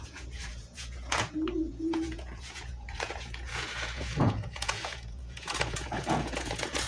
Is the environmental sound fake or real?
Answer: fake